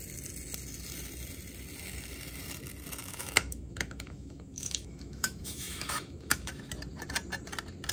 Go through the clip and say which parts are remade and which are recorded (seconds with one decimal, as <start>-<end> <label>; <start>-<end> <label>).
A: 0.0-3.0 recorded; 3.0-6.7 remade; 6.7-7.9 recorded